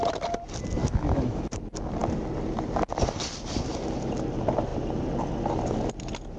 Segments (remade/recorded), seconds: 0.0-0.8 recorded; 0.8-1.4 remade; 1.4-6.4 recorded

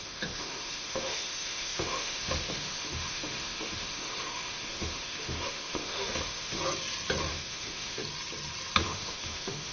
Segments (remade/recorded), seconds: 0.0-6.6 remade; 6.6-7.3 recorded; 7.3-8.0 remade; 8.0-8.8 recorded; 8.8-9.7 remade